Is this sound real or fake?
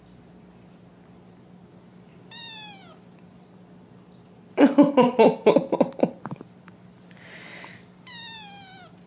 real